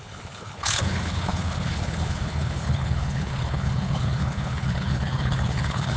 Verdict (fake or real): fake